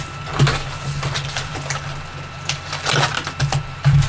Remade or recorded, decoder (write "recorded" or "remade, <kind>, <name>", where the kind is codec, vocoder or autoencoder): recorded